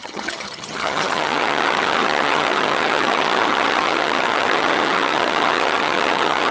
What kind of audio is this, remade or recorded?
remade